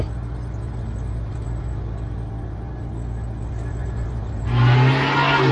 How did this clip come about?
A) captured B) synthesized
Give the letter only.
A